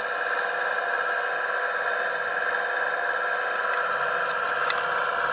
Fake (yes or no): no